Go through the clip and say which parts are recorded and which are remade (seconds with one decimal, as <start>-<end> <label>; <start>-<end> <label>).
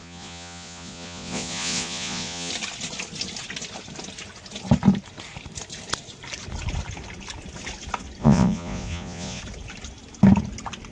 0.0-2.5 remade; 2.5-8.2 recorded; 8.2-9.4 remade; 9.4-10.9 recorded